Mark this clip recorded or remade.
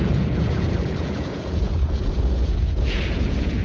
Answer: remade